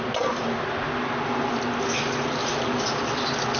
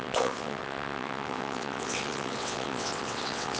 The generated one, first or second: second